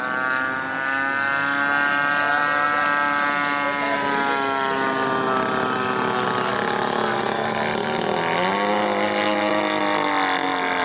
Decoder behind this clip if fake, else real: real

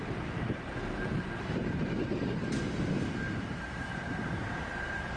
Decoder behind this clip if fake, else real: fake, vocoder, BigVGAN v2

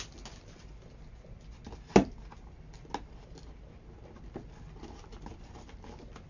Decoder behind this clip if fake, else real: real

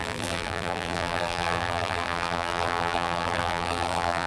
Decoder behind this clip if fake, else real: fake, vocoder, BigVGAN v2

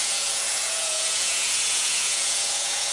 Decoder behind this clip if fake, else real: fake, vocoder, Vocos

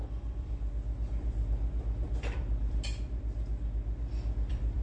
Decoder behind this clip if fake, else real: fake, vocoder, BigVGAN v2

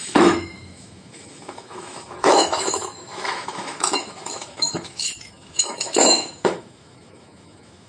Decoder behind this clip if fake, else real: fake, autoencoder, DAC-VAE